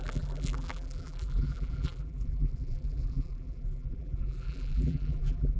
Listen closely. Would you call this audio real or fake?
fake